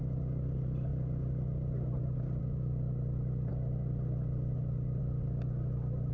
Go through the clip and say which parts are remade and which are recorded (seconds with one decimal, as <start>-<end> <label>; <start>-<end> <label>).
0.0-6.1 recorded